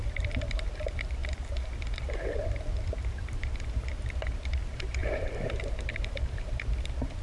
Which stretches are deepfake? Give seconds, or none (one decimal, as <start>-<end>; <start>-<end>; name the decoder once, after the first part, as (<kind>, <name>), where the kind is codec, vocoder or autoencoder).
0.0-7.2 (vocoder, BigVGAN v2)